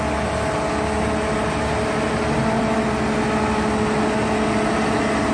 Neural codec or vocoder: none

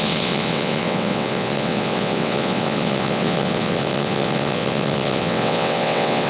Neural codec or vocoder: vocoder, WaveNeXt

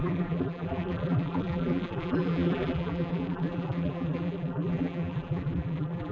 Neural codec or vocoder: vocoder, BigVGAN v2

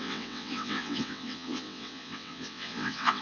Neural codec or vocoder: vocoder, WaveNeXt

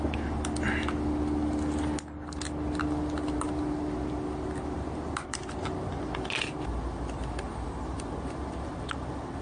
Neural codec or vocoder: none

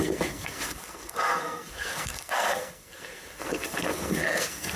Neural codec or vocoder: codec, SNAC